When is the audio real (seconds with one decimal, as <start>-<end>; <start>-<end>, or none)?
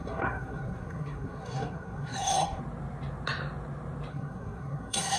2.6-4.1